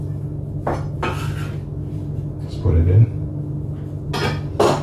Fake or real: real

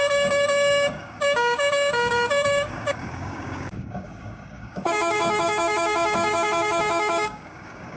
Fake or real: fake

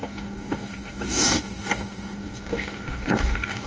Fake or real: fake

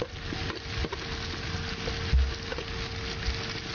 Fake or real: real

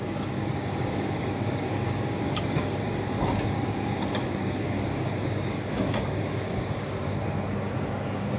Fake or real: fake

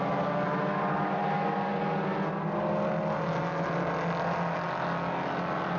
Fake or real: real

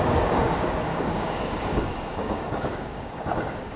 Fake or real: fake